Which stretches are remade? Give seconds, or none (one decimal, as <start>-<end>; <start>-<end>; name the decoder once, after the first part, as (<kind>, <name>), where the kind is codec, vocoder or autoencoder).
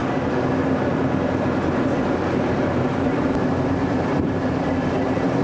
0.5-0.9 (vocoder, BigVGAN v2); 2.4-5.4